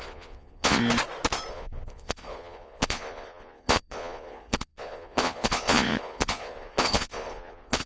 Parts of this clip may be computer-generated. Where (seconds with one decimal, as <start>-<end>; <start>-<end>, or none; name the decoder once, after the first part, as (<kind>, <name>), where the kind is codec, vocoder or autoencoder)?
0.0-0.8 (vocoder, Vocos); 1.5-7.9